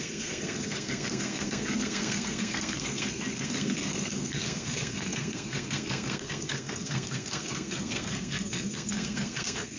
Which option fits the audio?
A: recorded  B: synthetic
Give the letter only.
B